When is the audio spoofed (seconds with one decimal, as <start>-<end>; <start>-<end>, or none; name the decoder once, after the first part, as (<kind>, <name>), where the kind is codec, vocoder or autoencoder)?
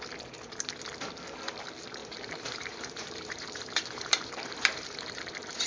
2.0-5.7 (vocoder, BigVGAN v2)